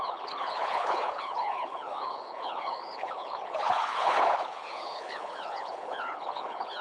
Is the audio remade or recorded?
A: remade